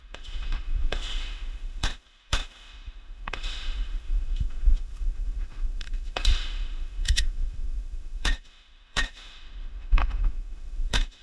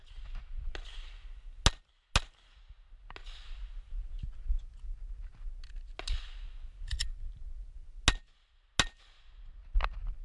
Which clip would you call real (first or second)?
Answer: second